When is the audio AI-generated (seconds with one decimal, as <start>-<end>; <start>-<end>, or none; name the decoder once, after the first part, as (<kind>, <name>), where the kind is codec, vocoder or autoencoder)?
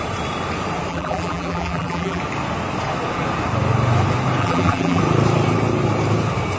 0.9-2.2 (vocoder, BigVGAN v2); 4.4-5.0